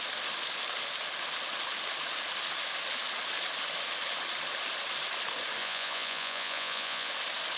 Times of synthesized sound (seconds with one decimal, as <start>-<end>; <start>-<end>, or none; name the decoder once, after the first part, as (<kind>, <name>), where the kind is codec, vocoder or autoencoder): 5.6-7.1 (vocoder, Vocos)